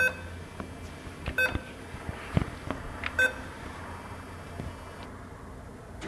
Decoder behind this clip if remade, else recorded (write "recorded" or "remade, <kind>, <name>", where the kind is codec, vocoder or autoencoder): recorded